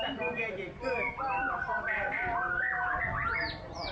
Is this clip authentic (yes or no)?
yes